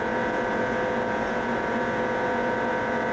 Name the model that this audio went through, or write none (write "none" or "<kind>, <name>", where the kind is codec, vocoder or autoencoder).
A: vocoder, Vocos